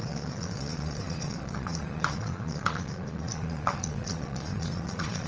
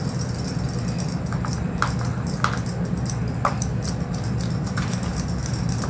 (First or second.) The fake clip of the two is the first